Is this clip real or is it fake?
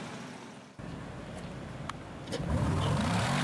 fake